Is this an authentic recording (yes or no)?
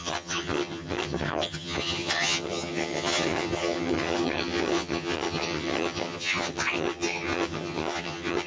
no